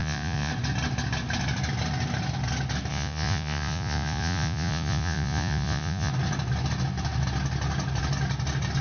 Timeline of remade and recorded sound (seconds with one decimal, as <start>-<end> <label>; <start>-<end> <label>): 0.0-0.5 remade; 0.5-2.9 recorded; 2.9-6.1 remade; 6.1-8.8 recorded